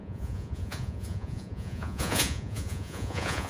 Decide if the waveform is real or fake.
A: fake